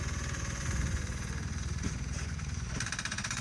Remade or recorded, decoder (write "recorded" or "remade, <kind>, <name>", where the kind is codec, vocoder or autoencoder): remade, vocoder, Vocos